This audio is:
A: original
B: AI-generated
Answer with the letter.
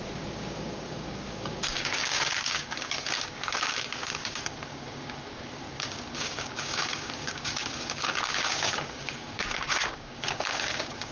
B